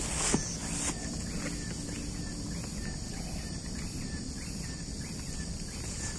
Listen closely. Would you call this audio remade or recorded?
recorded